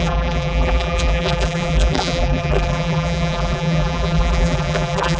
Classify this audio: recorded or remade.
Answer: remade